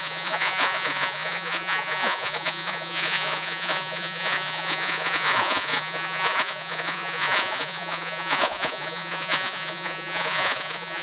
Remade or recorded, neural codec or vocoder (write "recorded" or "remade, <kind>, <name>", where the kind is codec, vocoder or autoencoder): remade, vocoder, Vocos